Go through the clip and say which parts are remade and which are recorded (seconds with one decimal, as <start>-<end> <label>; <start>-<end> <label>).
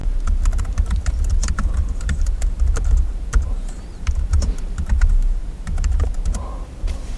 0.0-0.6 recorded; 0.6-7.2 remade